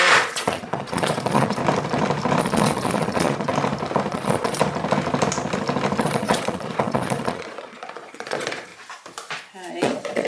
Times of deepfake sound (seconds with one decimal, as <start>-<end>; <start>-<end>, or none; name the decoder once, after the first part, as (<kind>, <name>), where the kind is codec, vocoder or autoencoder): 0.0-1.6 (vocoder, Vocos); 2.4-3.5; 4.1-4.6; 6.0-8.7; 9.7-10.3